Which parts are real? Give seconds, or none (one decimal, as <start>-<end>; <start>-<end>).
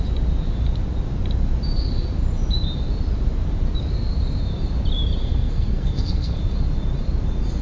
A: 0.0-5.2; 6.4-7.6